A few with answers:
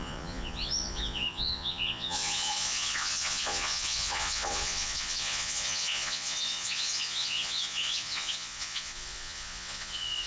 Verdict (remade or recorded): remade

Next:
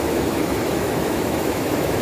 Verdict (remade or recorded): remade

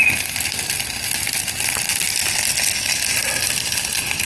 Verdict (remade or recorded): recorded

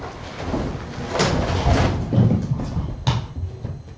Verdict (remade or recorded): recorded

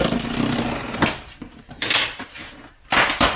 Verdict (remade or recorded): recorded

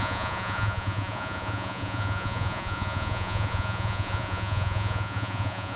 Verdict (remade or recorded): remade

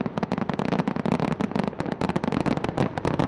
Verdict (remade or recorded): recorded